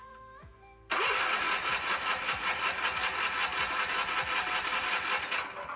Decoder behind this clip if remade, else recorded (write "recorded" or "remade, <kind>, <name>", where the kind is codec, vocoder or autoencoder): recorded